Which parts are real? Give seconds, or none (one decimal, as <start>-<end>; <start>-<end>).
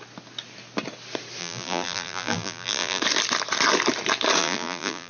0.0-1.4; 3.0-4.4